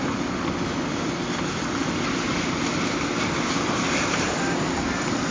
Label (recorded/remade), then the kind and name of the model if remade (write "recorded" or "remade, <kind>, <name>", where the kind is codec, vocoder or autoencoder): recorded